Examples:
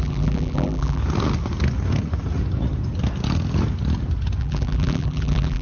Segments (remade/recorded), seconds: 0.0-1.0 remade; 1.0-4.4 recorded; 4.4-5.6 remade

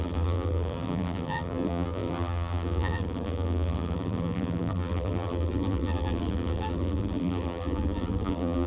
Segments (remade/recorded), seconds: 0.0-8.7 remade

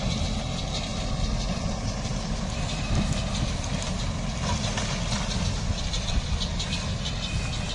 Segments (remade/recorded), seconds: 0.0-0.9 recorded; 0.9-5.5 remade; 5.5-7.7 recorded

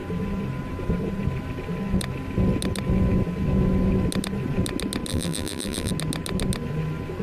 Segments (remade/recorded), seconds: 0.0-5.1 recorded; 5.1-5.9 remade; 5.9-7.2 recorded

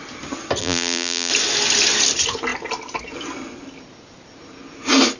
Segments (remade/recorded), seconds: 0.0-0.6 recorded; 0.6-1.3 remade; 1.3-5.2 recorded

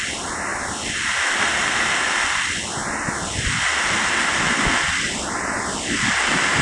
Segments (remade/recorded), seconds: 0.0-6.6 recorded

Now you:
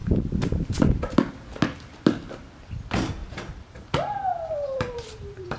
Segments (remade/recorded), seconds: 0.0-1.0 remade; 1.0-3.2 recorded; 3.2-5.6 remade

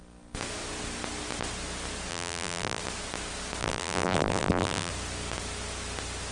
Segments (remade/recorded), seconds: 0.0-2.1 recorded; 2.1-2.8 remade; 2.8-3.6 recorded; 3.6-4.9 remade; 4.9-6.3 recorded